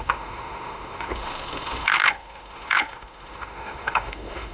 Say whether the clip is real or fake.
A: fake